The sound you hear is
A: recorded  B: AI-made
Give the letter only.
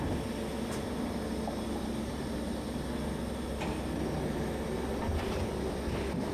A